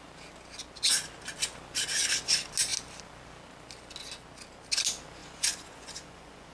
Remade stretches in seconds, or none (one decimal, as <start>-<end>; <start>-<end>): 5.2-6.5